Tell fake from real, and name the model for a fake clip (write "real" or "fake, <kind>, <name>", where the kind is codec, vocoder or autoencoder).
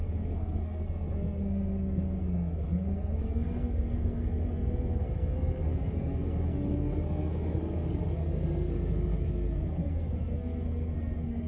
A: fake, codec, SNAC